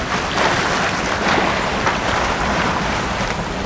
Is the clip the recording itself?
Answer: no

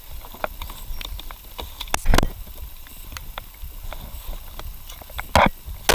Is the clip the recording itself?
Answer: yes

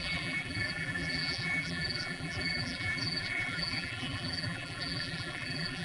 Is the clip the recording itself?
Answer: no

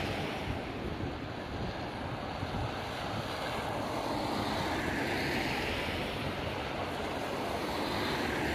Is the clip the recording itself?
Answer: yes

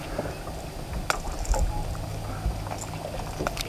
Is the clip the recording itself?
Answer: yes